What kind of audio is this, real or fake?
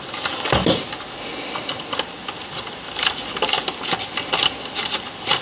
real